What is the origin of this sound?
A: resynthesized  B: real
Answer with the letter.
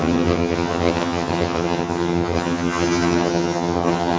A